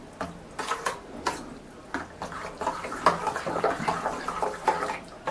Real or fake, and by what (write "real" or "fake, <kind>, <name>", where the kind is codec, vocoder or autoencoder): real